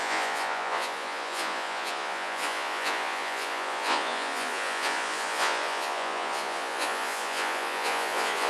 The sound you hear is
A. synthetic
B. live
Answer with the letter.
A